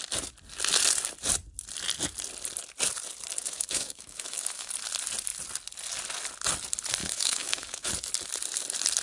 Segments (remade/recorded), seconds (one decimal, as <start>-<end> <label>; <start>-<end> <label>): 0.0-3.4 recorded; 3.4-4.7 remade; 4.7-7.0 recorded; 7.0-7.9 remade; 7.9-9.0 recorded

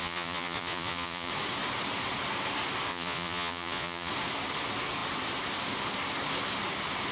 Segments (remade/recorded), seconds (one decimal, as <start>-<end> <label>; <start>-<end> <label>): 0.0-1.3 remade; 1.3-2.9 recorded; 2.9-4.1 remade; 4.1-7.1 recorded

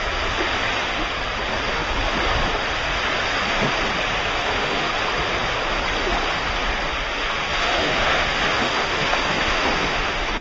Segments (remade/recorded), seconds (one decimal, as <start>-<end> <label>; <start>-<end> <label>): 0.0-4.2 recorded; 4.2-4.9 remade; 4.9-6.9 recorded; 6.9-10.4 remade

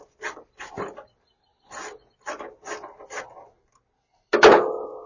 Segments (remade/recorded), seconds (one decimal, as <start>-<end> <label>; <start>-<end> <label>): 0.0-5.1 recorded